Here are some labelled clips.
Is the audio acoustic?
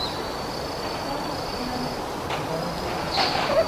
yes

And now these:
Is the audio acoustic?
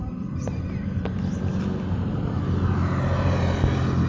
yes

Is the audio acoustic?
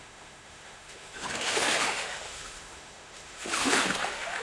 no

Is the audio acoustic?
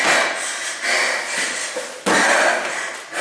yes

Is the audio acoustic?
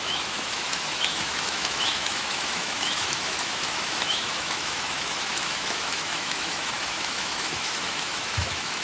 no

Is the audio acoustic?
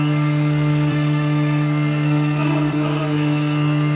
no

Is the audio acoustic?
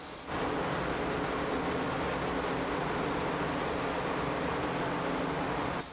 yes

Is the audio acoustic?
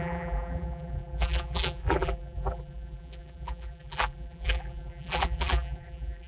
no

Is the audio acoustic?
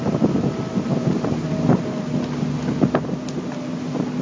yes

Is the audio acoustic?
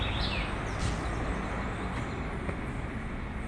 yes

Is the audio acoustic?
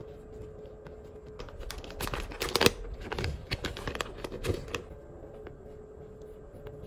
yes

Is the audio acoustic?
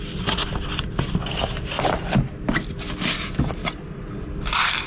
yes